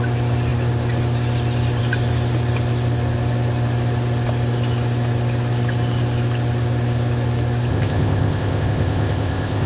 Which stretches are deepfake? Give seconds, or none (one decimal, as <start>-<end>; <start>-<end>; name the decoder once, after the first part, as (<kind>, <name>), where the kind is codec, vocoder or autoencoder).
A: 7.7-9.7 (codec, ZipCodec)